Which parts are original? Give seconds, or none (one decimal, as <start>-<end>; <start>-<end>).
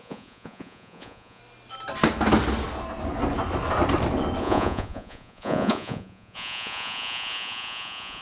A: 1.4-4.4